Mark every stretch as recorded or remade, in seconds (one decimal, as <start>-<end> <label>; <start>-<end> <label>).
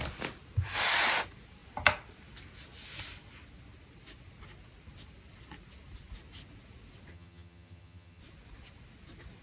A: 0.0-7.1 recorded; 7.1-8.2 remade; 8.2-9.4 recorded